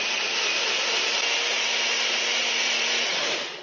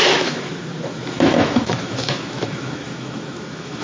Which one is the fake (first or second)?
second